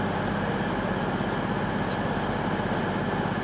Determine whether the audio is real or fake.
real